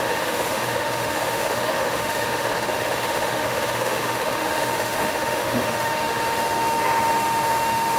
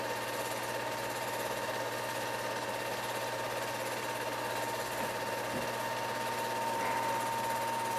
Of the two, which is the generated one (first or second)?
first